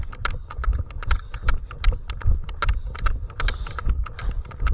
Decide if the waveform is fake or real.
real